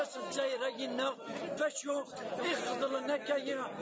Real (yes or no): yes